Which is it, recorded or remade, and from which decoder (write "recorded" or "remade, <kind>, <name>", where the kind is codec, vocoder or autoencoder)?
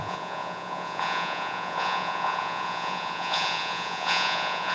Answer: remade, vocoder, Vocos